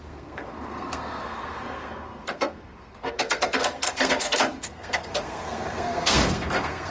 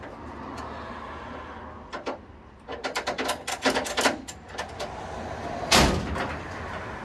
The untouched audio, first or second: second